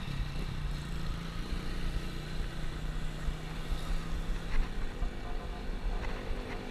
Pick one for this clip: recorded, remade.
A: recorded